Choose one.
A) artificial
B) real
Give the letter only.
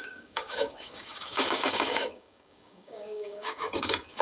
A